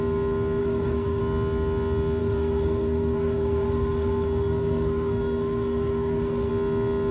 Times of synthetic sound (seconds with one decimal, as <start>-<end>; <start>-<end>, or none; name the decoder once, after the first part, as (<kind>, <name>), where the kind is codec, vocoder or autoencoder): 0.6-1.2 (codec, SNAC); 2.2-6.5